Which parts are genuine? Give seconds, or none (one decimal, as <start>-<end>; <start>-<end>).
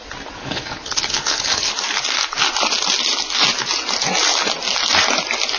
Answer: 0.0-0.4; 1.7-5.6